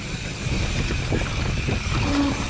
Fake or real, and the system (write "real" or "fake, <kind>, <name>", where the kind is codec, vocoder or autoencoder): real